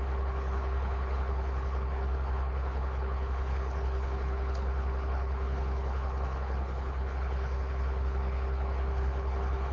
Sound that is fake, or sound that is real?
fake